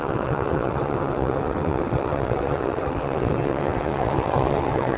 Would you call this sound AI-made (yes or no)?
yes